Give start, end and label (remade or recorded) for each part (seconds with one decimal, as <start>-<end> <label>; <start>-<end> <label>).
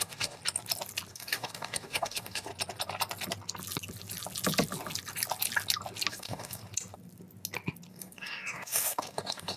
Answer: 0.0-0.4 remade; 0.4-1.1 recorded; 1.1-2.5 remade; 2.5-6.1 recorded; 6.1-6.6 remade; 6.6-7.9 recorded; 7.9-9.6 remade